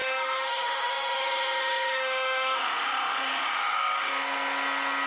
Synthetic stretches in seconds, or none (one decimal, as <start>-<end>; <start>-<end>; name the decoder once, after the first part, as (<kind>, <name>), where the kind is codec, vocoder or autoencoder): 0.0-4.1 (autoencoder, DAC-VAE)

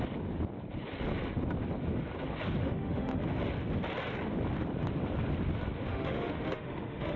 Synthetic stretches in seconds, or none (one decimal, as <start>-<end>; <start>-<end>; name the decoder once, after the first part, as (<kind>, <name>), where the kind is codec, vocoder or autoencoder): 2.6-3.2 (autoencoder, DAC-VAE); 5.9-7.2